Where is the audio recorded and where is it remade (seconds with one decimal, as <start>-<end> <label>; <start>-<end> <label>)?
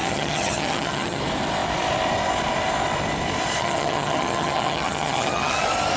0.0-1.2 remade; 1.2-3.6 recorded; 3.6-5.6 remade; 5.6-6.0 recorded